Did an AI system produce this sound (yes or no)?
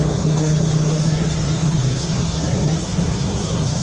yes